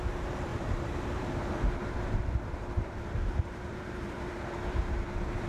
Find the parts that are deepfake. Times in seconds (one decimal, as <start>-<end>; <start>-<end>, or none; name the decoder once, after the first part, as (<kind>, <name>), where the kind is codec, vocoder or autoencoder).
0.0-5.5 (vocoder, BigVGAN v2)